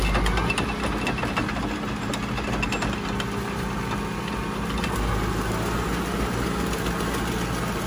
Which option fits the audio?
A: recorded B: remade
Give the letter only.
A